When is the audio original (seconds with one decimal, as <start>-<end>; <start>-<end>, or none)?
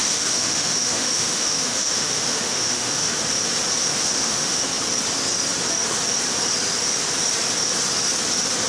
3.2-3.8; 4.6-8.7